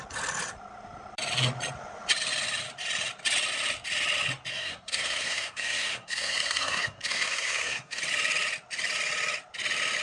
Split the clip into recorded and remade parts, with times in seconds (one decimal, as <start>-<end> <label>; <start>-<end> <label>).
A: 0.0-4.5 recorded; 4.5-8.0 remade; 8.0-10.0 recorded

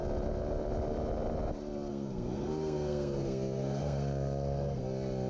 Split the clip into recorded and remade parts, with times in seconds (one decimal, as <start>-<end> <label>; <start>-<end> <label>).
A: 0.0-1.9 recorded; 1.9-4.8 remade; 4.8-5.3 recorded

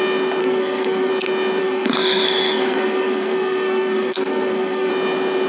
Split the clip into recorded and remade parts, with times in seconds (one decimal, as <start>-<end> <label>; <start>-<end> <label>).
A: 0.0-0.4 recorded; 0.4-1.1 remade; 1.1-1.6 recorded; 1.6-4.9 remade; 4.9-5.5 recorded

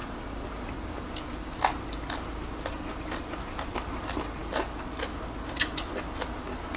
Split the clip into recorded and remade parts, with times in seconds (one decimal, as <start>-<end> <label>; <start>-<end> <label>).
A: 0.0-6.8 recorded